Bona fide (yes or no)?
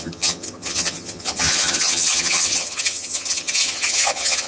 no